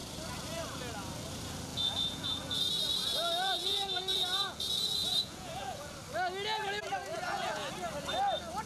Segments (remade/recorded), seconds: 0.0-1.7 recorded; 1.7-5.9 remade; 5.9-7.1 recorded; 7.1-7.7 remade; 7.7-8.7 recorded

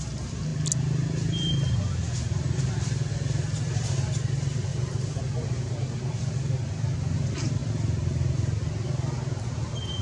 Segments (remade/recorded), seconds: 0.0-4.7 recorded; 4.7-5.2 remade; 5.2-10.0 recorded